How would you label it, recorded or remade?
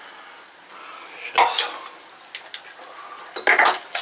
recorded